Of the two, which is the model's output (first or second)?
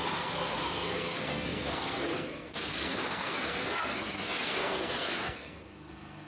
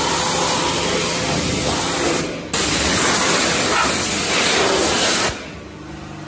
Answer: first